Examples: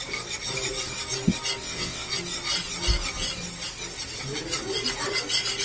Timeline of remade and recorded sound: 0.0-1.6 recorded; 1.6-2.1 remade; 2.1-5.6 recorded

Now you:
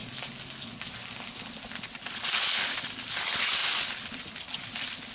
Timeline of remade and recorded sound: 0.0-5.1 recorded

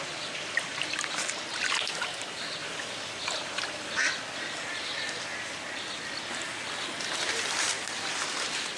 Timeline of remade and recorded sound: 0.0-8.8 recorded

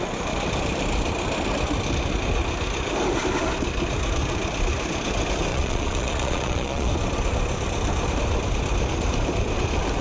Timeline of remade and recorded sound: 0.0-5.5 recorded; 5.5-6.9 remade; 6.9-10.0 recorded

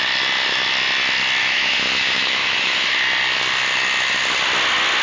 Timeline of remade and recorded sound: 0.0-1.4 recorded; 1.4-2.9 remade; 2.9-5.0 recorded

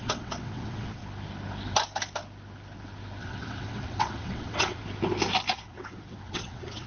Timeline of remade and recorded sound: 0.0-1.0 remade; 1.0-3.2 recorded; 3.2-4.8 remade; 4.8-5.5 recorded; 5.5-6.9 remade

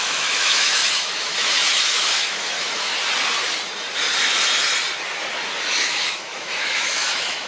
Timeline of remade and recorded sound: 0.0-2.9 remade; 2.9-5.8 recorded; 5.8-7.5 remade

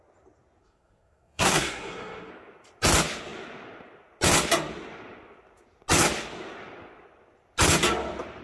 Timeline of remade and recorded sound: 0.0-0.6 recorded; 0.6-2.3 remade; 2.3-8.4 recorded